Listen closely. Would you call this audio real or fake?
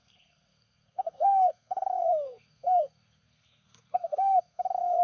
fake